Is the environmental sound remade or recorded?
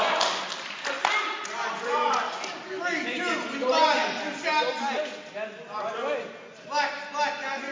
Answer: recorded